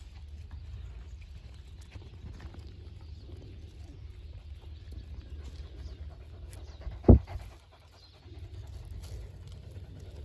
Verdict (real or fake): real